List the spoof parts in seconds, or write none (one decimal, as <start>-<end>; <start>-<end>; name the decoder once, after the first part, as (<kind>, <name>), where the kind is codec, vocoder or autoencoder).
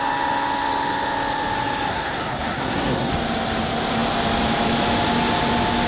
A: 1.9-3.1 (codec, SNAC)